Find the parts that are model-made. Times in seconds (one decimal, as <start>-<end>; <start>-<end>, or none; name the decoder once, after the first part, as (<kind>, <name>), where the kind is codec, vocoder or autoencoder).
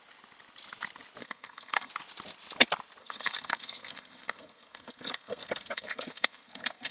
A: 1.2-1.9 (codec, SNAC); 3.0-6.9